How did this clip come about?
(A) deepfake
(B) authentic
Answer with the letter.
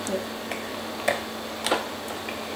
B